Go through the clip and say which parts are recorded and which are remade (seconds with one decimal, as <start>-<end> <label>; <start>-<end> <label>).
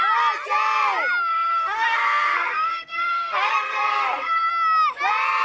0.0-1.3 recorded; 1.3-4.5 remade; 4.5-5.4 recorded